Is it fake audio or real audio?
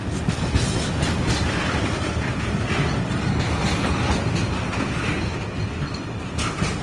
real